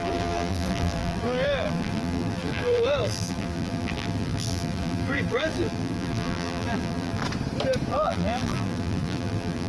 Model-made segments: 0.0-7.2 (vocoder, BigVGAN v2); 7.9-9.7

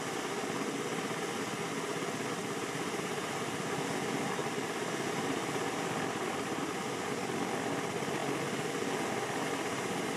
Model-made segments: 4.4-6.6 (vocoder, BigVGAN v2)

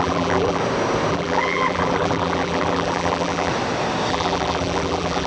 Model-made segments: 0.0-0.6 (vocoder, BigVGAN v2); 1.1-3.5; 4.1-5.3

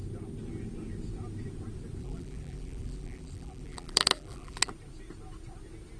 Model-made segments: 2.0-4.7 (vocoder, BigVGAN v2)

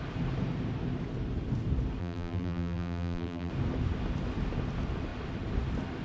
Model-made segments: 2.0-3.5 (vocoder, BigVGAN v2)

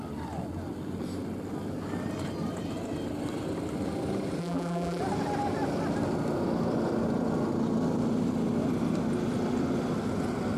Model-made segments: 4.4-5.0 (vocoder, BigVGAN v2)

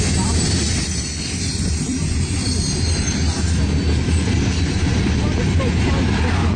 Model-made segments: 0.0-3.2 (vocoder, BigVGAN v2)

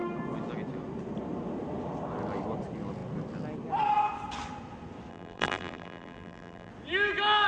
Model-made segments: 5.1-6.7 (vocoder, BigVGAN v2)